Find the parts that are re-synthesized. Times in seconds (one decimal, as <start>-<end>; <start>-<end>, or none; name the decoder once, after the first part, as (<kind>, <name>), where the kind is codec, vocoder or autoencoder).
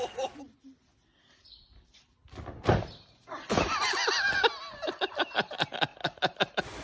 0.0-2.2 (vocoder, BigVGAN v2); 5.4-5.9